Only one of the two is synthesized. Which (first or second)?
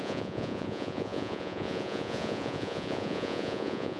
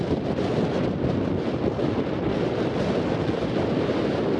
first